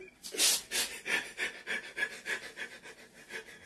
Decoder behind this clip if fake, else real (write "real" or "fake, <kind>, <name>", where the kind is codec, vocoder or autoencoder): real